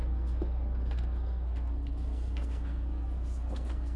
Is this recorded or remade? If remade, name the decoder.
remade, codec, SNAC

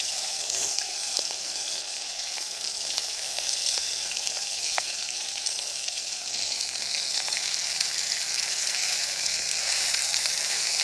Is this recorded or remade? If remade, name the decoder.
remade, codec, SNAC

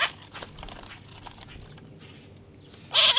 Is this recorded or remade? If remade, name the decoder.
recorded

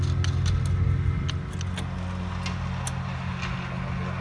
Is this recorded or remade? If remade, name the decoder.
recorded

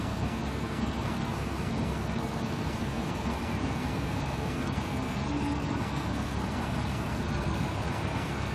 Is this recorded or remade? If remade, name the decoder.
remade, codec, SNAC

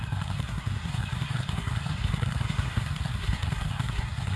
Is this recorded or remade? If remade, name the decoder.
remade, codec, SNAC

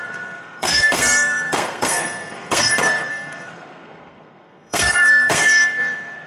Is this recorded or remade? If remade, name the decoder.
remade, codec, SNAC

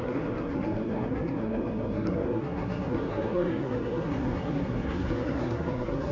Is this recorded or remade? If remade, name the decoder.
remade, codec, SNAC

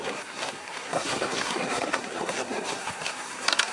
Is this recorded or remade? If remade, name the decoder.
remade, codec, SNAC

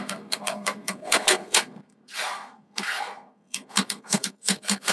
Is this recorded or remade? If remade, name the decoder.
remade, codec, SNAC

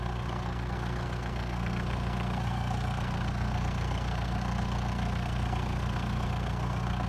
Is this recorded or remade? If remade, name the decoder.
remade, codec, SNAC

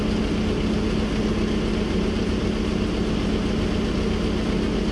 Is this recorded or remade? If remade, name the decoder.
recorded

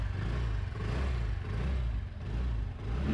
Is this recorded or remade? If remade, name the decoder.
recorded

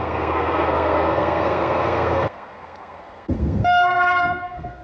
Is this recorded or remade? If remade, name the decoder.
remade, codec, SNAC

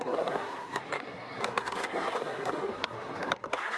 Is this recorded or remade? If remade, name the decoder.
remade, codec, SNAC